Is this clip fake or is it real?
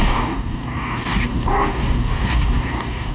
fake